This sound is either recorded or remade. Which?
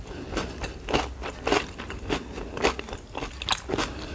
recorded